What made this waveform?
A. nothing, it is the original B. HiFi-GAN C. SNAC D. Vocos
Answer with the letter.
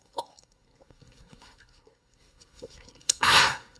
C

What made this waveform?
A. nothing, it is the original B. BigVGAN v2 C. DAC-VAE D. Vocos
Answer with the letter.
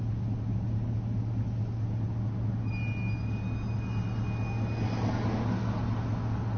A